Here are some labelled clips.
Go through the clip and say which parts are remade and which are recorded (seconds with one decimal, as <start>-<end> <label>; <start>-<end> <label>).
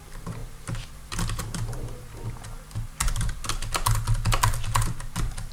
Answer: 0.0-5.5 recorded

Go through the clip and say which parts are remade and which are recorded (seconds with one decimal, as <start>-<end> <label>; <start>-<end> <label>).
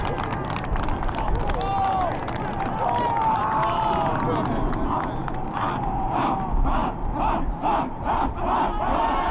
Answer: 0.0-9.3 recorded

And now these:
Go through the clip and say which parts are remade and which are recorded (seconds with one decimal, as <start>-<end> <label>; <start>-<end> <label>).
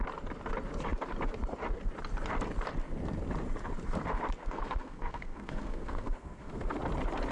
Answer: 0.0-4.4 recorded; 4.4-6.8 remade; 6.8-7.3 recorded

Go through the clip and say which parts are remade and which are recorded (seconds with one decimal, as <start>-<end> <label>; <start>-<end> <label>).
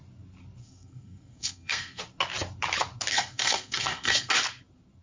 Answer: 0.0-0.6 recorded; 0.6-2.0 remade; 2.0-3.1 recorded; 3.1-4.3 remade; 4.3-5.0 recorded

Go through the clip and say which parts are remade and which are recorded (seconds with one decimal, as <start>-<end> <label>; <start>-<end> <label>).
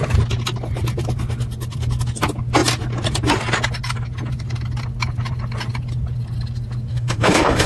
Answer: 0.0-6.9 recorded; 6.9-7.7 remade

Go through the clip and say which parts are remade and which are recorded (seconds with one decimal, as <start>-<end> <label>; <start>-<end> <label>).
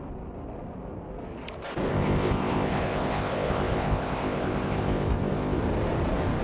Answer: 0.0-1.9 recorded; 1.9-5.6 remade; 5.6-6.4 recorded